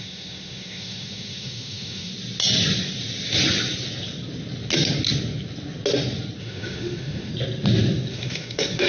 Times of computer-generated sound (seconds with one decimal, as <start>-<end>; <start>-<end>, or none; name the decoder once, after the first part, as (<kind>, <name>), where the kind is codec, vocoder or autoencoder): 0.0-2.1 (autoencoder, DAC-VAE); 6.4-7.3; 8.1-8.9